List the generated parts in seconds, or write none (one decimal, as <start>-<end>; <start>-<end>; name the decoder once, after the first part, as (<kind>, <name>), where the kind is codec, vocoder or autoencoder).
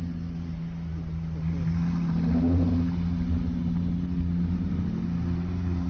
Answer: none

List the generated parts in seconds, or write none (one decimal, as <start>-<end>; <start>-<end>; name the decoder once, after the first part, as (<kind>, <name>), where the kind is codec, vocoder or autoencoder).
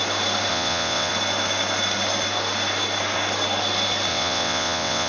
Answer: 0.5-1.1 (vocoder, WaveNeXt); 4.1-5.1